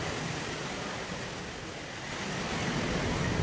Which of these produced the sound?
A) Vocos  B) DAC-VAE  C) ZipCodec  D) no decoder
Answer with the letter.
D